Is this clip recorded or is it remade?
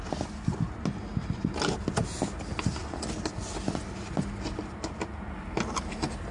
recorded